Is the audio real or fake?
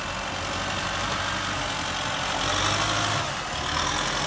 real